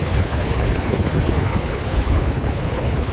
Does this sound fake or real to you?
fake